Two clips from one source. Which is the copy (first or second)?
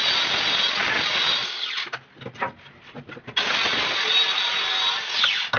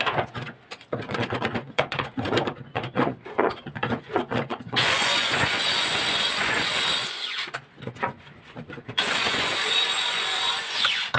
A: second